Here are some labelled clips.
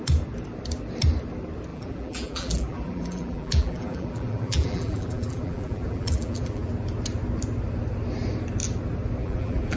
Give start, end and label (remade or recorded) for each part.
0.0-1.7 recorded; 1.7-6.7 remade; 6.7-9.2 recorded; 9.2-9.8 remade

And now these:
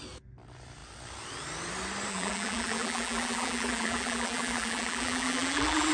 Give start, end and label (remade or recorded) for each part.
0.0-2.1 recorded; 2.1-5.9 remade

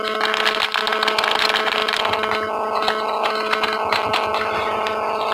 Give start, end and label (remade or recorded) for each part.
0.0-5.3 recorded